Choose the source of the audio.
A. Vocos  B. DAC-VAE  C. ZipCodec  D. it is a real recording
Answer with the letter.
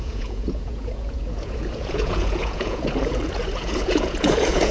A